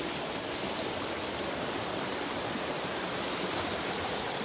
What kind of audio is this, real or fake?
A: real